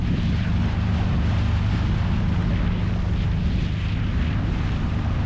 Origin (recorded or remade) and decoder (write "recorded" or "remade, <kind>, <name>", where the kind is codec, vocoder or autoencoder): recorded